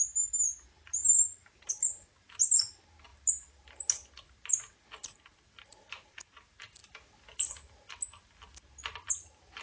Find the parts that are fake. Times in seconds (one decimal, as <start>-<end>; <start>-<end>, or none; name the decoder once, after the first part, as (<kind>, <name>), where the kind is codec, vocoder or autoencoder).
none